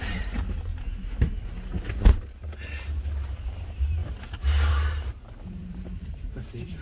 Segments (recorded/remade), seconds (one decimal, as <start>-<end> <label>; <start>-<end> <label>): 0.0-0.7 remade; 0.7-2.4 recorded; 2.4-4.0 remade; 4.0-4.7 recorded; 4.7-6.8 remade